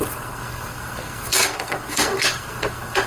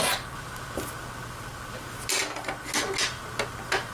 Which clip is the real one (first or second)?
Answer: second